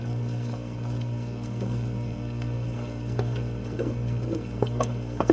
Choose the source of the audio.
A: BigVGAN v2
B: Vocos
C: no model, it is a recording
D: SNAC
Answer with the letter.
D